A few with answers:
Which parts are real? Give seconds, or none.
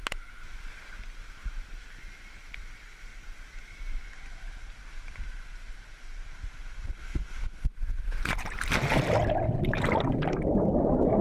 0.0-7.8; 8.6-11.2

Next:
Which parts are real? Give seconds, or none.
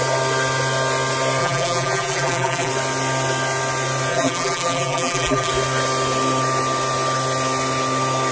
0.0-1.4; 2.7-4.1; 5.5-8.3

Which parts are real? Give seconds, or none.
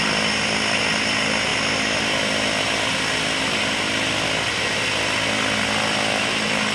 0.0-6.7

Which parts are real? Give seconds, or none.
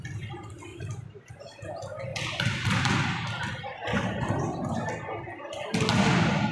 0.0-0.7; 1.3-2.1; 4.3-6.5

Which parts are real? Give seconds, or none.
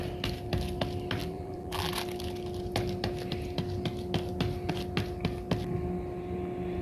0.0-1.2; 1.9-6.8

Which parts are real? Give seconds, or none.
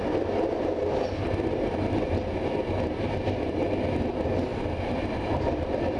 0.0-4.5